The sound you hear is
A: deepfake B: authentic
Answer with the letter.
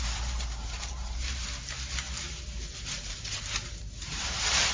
A